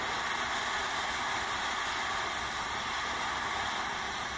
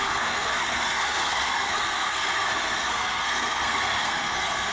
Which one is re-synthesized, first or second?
second